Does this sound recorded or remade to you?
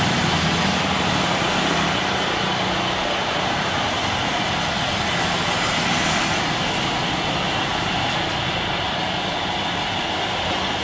recorded